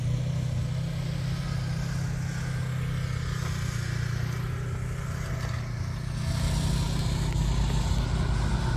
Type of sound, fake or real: real